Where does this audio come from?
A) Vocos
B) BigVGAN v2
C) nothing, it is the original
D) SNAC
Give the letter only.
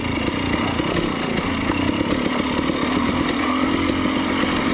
C